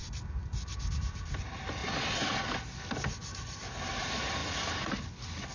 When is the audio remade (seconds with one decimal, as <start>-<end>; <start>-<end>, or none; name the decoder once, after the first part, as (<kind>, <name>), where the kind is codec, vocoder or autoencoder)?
none